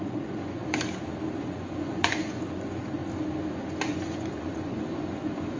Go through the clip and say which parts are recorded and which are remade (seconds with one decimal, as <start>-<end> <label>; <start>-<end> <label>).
0.0-0.6 remade; 0.6-1.3 recorded; 1.3-3.0 remade; 3.0-3.5 recorded; 3.5-5.6 remade